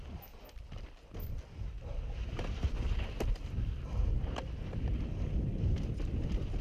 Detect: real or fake real